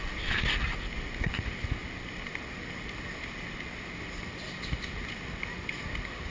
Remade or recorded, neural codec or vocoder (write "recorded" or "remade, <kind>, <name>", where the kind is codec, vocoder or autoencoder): recorded